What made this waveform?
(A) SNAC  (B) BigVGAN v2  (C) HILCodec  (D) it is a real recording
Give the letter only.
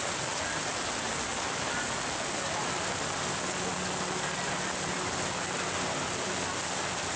D